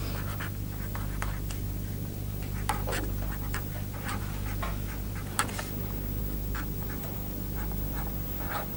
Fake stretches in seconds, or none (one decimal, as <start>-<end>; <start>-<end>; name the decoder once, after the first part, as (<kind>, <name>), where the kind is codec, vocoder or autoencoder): none

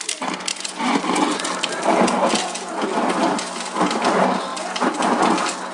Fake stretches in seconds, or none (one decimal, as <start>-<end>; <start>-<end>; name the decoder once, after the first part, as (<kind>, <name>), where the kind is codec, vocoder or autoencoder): 0.5-1.5 (vocoder, Vocos)

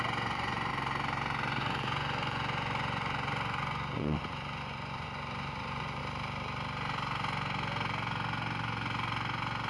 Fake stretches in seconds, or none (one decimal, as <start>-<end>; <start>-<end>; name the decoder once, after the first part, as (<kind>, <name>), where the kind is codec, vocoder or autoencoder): 0.0-0.7 (vocoder, Vocos); 1.6-6.0